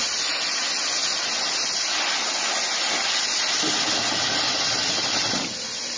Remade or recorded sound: recorded